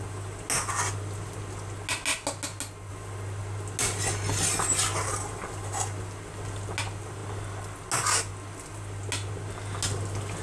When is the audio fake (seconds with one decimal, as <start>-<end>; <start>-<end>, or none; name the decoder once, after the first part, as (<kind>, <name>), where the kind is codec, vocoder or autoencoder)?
none